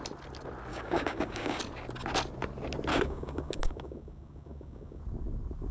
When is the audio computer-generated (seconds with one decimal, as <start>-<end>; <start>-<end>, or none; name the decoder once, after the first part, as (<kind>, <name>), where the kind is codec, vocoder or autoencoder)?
0.7-1.6 (codec, DAC); 2.9-5.0